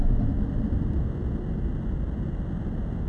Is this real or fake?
real